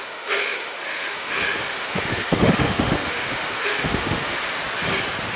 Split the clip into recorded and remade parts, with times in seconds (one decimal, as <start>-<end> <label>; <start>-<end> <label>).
0.0-4.4 remade; 4.4-5.4 recorded